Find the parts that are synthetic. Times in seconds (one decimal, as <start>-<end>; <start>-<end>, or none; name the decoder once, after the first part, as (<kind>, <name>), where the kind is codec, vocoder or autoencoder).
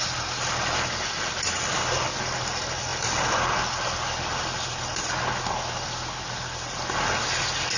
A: none